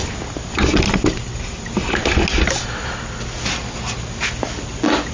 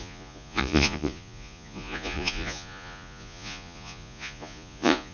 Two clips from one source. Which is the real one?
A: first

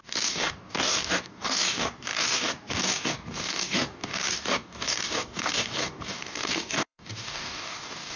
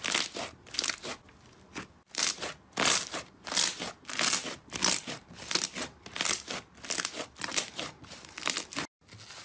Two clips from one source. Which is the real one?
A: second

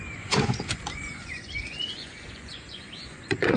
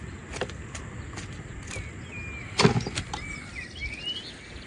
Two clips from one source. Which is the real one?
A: second